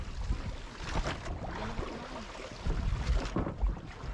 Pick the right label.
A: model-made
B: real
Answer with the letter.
B